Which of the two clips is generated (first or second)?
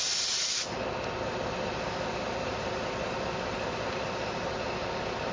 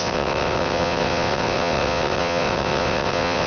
second